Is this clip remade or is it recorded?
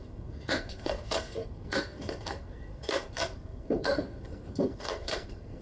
remade